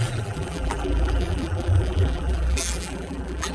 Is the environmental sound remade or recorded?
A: remade